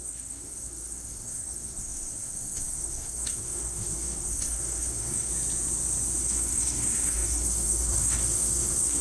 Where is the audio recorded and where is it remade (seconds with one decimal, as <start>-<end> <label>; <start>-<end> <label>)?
0.0-5.3 remade; 5.3-6.2 recorded; 6.2-9.0 remade